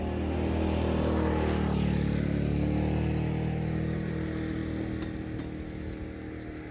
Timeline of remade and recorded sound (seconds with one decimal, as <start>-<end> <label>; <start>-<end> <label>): 0.0-6.7 recorded